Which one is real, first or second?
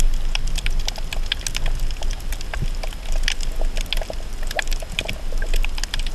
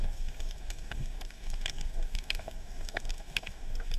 first